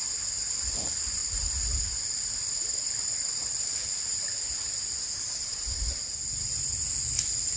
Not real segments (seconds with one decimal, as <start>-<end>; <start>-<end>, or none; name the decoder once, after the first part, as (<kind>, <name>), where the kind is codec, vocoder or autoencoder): none